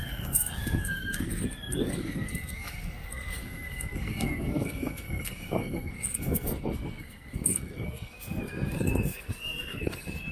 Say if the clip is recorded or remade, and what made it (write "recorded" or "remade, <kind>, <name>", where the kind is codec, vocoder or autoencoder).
remade, codec, SNAC